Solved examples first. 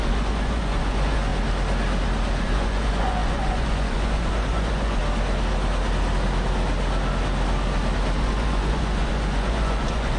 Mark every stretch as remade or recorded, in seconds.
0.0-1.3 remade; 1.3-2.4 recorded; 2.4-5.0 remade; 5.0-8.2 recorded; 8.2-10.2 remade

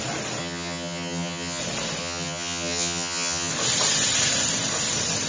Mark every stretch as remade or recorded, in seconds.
0.0-0.4 recorded; 0.4-1.6 remade; 1.6-2.0 recorded; 2.0-3.5 remade; 3.5-5.3 recorded

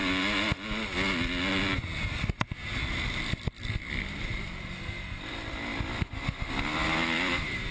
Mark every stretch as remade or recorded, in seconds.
0.0-1.5 recorded; 1.5-2.8 remade; 2.8-3.8 recorded; 3.8-7.7 remade